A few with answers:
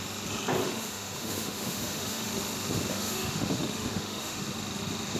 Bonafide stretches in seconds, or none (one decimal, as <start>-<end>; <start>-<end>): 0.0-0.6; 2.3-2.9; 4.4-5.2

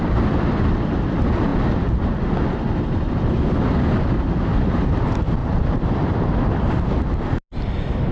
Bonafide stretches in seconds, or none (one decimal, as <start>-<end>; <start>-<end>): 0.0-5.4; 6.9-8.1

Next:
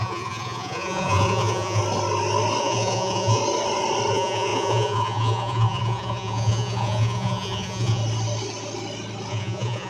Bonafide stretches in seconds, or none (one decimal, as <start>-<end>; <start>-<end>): 1.8-2.6; 3.4-4.1; 8.0-9.3

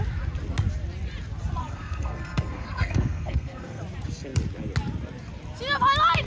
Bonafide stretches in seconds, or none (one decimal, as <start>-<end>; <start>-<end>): 0.0-1.6; 3.8-6.3

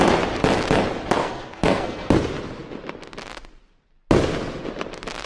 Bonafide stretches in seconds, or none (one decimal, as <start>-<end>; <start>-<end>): 0.0-1.2; 2.1-5.3

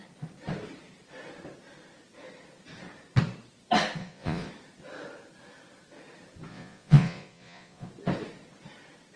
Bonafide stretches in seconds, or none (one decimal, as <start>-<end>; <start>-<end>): 0.0-4.0; 4.5-6.5; 7.9-9.2

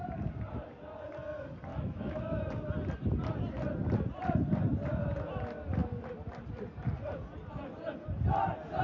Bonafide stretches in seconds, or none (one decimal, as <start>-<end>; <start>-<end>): 0.0-1.7; 2.5-8.8